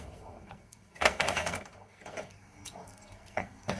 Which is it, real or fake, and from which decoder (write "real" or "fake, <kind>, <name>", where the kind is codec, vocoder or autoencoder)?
fake, codec, SNAC